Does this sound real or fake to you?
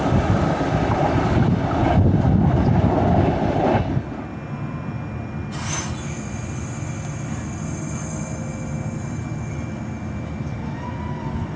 real